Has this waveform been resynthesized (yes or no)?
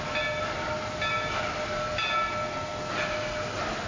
no